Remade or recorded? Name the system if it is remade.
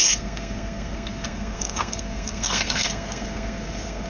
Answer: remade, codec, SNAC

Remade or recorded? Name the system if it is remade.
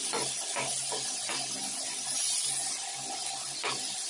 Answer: recorded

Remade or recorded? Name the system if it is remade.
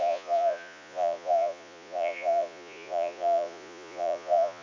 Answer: remade, vocoder, Vocos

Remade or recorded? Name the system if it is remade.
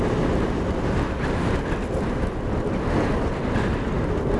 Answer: recorded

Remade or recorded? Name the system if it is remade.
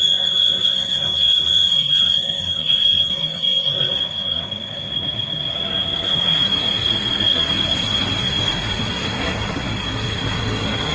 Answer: remade, codec, SNAC